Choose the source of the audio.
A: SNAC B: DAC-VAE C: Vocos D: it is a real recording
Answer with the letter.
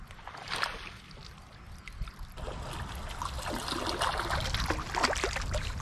D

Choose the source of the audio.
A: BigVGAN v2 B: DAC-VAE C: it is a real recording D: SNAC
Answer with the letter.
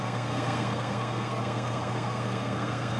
D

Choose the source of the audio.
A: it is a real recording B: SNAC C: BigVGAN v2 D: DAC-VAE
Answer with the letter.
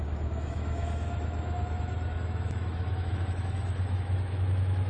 D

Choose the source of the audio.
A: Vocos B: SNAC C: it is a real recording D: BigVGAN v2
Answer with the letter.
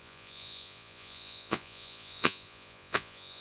A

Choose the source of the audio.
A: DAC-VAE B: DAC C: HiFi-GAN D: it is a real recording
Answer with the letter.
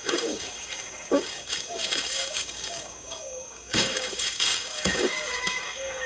B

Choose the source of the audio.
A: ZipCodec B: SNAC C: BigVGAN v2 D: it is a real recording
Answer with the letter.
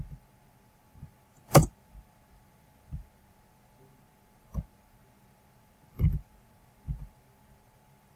C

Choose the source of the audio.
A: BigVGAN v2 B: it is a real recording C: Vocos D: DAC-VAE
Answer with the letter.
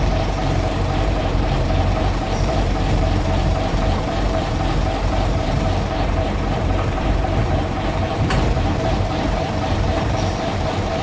A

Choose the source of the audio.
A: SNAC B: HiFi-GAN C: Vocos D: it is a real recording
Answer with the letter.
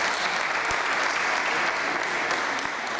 D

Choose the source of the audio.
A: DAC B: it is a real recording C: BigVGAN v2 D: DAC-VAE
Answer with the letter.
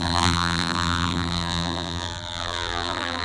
C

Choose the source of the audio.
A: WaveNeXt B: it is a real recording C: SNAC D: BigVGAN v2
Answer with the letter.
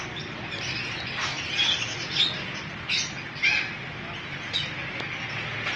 B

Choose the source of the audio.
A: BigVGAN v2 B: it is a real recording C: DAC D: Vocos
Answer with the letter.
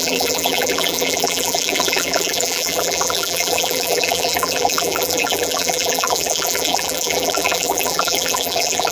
A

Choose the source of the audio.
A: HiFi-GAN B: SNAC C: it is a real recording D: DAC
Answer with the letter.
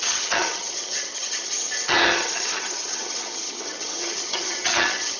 A